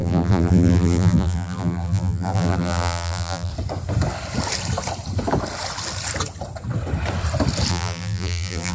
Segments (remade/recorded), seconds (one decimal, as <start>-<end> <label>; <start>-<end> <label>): 0.0-3.5 remade; 3.5-7.7 recorded; 7.7-8.7 remade